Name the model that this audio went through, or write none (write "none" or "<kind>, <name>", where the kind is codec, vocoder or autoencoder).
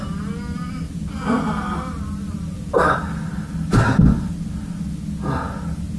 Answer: none